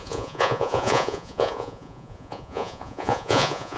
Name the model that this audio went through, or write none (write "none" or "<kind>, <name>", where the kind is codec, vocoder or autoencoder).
vocoder, Vocos